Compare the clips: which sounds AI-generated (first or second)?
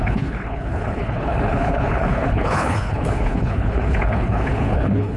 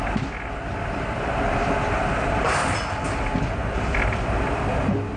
first